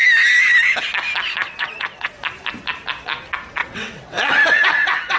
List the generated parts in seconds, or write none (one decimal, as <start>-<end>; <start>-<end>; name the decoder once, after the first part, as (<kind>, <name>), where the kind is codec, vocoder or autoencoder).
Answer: 1.4-2.1 (vocoder, WaveNeXt); 3.6-5.2